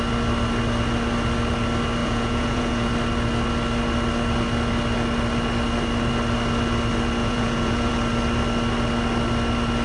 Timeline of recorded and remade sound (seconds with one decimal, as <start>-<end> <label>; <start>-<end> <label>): 0.0-2.0 recorded; 2.0-2.9 remade; 2.9-7.2 recorded; 7.2-7.9 remade; 7.9-9.8 recorded